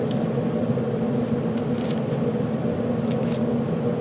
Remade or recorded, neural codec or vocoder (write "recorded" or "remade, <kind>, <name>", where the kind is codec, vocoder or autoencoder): recorded